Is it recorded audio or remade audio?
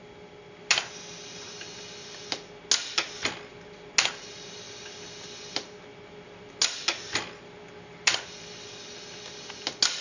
recorded